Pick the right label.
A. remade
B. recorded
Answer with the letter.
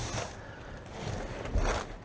B